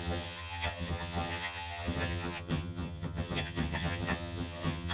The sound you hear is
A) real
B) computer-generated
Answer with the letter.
B